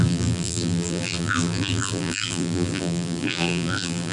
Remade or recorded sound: remade